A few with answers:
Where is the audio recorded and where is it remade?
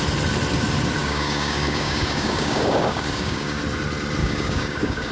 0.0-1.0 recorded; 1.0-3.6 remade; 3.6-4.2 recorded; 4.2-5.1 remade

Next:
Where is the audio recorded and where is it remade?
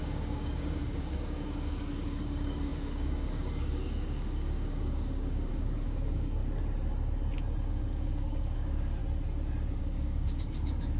0.0-6.4 remade; 6.4-7.7 recorded; 7.7-9.0 remade; 9.0-9.8 recorded; 9.8-11.0 remade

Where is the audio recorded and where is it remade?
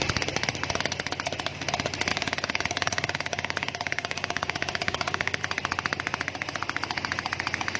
0.0-2.1 recorded; 2.1-5.4 remade; 5.4-7.8 recorded